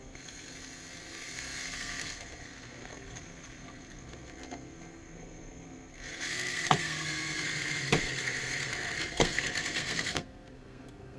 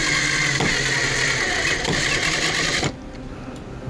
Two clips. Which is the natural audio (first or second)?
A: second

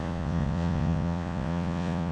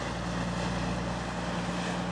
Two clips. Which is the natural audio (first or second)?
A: second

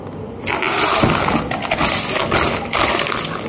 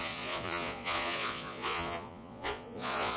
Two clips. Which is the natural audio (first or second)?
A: first